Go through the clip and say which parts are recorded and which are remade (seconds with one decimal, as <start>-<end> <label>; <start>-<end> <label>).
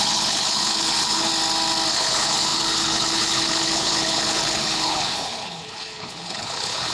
0.0-1.3 remade; 1.3-1.9 recorded; 1.9-6.9 remade